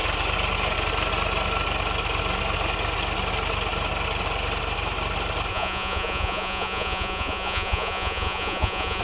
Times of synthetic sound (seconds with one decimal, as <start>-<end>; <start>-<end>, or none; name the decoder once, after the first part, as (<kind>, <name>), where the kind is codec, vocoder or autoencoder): 5.5-9.0 (vocoder, Vocos)